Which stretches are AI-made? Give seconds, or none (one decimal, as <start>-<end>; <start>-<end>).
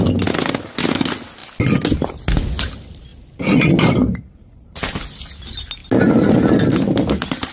none